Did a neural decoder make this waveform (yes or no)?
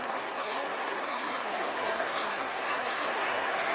yes